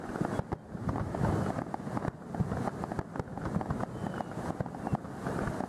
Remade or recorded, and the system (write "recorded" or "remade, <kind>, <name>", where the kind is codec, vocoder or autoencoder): recorded